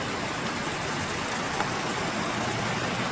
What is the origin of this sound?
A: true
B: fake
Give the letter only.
A